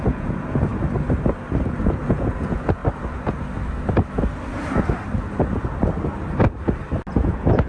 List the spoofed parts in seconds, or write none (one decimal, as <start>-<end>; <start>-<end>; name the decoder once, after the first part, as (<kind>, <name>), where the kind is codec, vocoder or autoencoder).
0.0-0.7 (vocoder, Vocos); 1.8-2.8; 7.1-7.7